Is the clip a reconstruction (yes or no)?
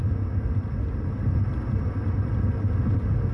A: no